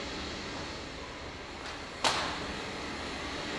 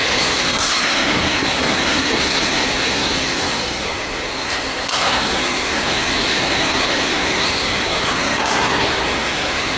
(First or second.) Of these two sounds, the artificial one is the second